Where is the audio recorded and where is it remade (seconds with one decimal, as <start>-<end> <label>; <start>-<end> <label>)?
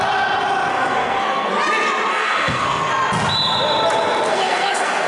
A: 0.0-0.7 recorded; 0.7-1.5 remade; 1.5-2.1 recorded; 2.1-2.9 remade; 2.9-4.3 recorded; 4.3-5.1 remade